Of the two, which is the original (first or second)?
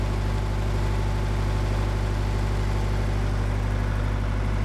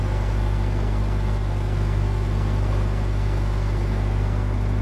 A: first